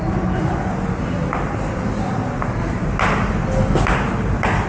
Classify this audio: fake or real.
real